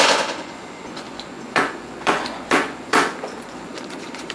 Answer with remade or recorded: remade